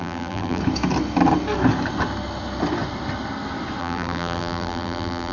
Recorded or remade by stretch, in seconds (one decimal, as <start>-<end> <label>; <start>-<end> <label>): 0.0-0.6 remade; 0.6-3.8 recorded; 3.8-5.3 remade